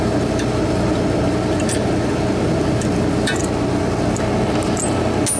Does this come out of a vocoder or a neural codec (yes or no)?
no